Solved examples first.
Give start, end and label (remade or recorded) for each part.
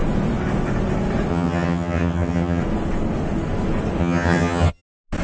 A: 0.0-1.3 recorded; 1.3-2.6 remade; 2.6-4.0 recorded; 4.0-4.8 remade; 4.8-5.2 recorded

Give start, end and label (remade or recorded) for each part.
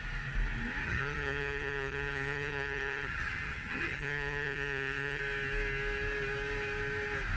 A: 0.0-0.8 recorded; 0.8-5.2 remade; 5.2-7.4 recorded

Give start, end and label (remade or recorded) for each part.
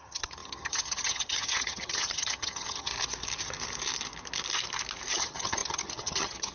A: 0.0-2.9 remade; 2.9-5.1 recorded; 5.1-6.5 remade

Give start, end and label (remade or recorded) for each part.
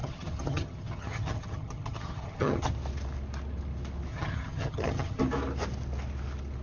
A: 0.0-2.7 remade; 2.7-4.1 recorded; 4.1-5.2 remade; 5.2-6.6 recorded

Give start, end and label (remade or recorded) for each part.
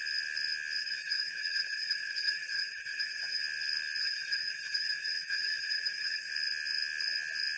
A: 0.0-0.8 recorded; 0.8-3.4 remade; 3.4-4.0 recorded; 4.0-6.3 remade; 6.3-7.6 recorded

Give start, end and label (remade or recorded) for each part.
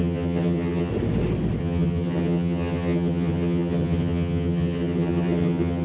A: 0.0-0.9 remade; 0.9-1.6 recorded; 1.6-5.8 remade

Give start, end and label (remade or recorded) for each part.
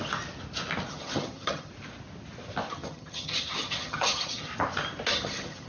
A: 0.0-0.9 recorded; 0.9-1.7 remade; 1.7-2.7 recorded; 2.7-4.5 remade; 4.5-5.1 recorded; 5.1-5.7 remade